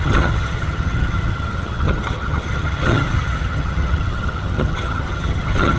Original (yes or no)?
no